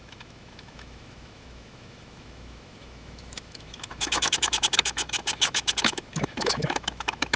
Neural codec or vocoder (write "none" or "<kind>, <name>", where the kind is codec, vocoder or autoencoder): autoencoder, DAC-VAE